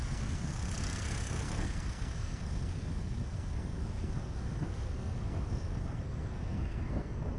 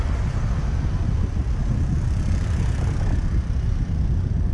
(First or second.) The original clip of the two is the second